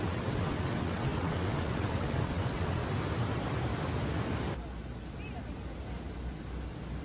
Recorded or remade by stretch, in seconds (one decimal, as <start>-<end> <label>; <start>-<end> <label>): 0.0-2.8 remade; 2.8-7.0 recorded